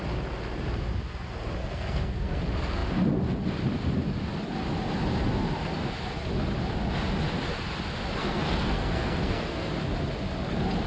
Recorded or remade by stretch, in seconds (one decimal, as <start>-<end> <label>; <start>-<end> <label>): 0.0-1.6 recorded; 1.6-2.4 remade; 2.4-8.2 recorded; 8.2-9.7 remade; 9.7-10.9 recorded

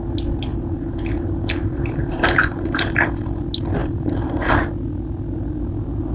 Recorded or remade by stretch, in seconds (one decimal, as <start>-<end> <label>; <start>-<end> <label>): 0.0-0.5 recorded; 0.5-3.4 remade; 3.4-3.8 recorded; 3.8-4.5 remade; 4.5-6.1 recorded

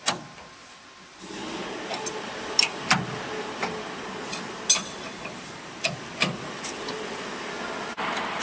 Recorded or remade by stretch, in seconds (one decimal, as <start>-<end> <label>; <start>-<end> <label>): 0.0-8.4 recorded

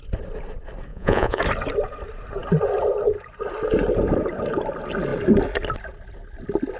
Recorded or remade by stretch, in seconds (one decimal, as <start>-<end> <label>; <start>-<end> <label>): 0.0-0.9 recorded; 0.9-1.4 remade; 1.4-6.8 recorded

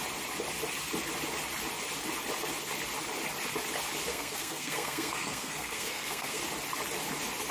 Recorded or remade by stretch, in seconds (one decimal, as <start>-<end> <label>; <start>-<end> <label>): 0.0-4.1 recorded; 4.1-6.4 remade; 6.4-7.5 recorded

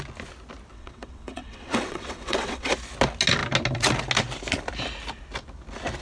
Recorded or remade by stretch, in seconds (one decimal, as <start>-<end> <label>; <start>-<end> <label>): 0.0-0.7 recorded; 0.7-2.7 remade; 2.7-6.0 recorded

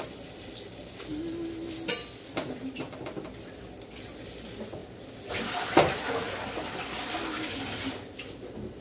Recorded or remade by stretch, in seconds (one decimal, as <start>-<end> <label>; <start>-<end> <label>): 0.0-8.8 recorded